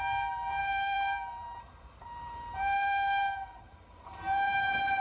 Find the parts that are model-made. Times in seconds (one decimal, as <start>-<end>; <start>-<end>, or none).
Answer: 0.0-5.0